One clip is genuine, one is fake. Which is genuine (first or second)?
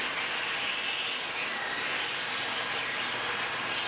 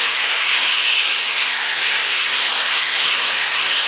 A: first